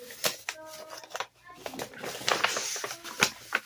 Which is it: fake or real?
real